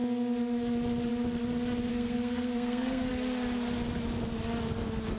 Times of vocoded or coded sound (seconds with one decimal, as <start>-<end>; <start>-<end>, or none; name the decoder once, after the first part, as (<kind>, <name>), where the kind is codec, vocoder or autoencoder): 1.9-3.1 (codec, SNAC)